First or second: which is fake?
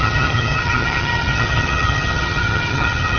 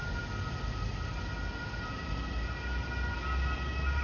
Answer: first